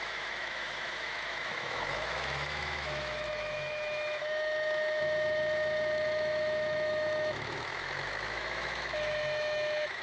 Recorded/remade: remade